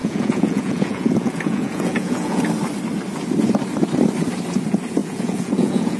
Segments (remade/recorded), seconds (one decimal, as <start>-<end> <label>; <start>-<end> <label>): 0.0-2.4 remade; 2.4-5.0 recorded; 5.0-6.0 remade